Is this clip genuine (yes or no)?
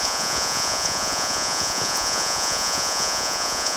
no